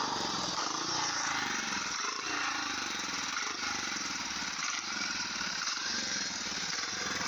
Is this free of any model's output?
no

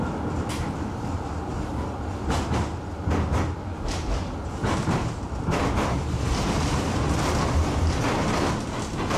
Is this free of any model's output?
yes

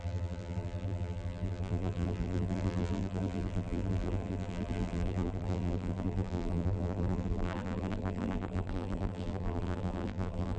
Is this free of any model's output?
no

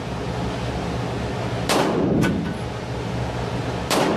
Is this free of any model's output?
yes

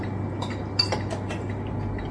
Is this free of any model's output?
yes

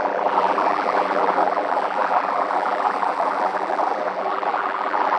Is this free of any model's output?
no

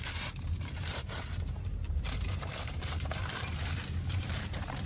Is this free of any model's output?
no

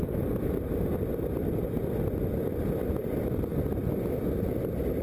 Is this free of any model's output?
yes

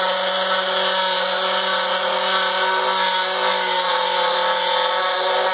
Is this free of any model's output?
yes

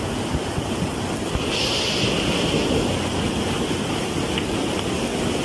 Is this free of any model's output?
yes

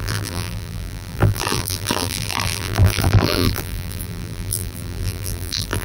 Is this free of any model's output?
no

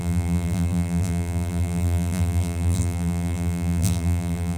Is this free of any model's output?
no